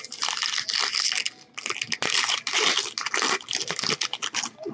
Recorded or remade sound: recorded